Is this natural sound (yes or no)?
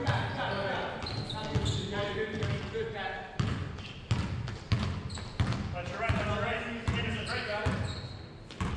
yes